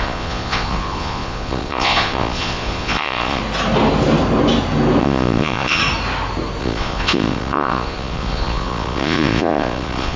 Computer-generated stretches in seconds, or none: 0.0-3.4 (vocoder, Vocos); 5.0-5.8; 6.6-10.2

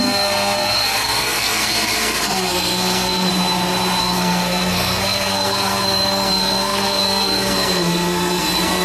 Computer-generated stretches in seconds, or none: 0.0-3.3 (codec, SNAC); 4.0-8.8

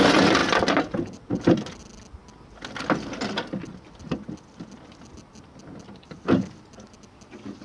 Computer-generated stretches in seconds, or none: none

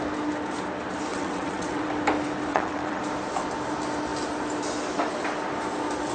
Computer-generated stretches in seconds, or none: 1.1-1.9 (vocoder, WaveNeXt); 2.5-3.0

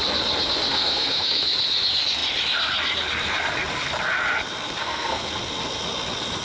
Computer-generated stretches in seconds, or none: 0.7-1.4 (codec, SNAC); 4.8-5.3